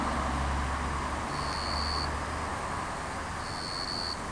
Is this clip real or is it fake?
real